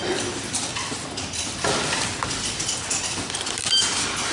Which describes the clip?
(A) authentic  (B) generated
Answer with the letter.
A